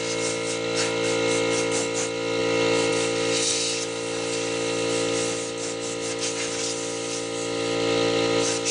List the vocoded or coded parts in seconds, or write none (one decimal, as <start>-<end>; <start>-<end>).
none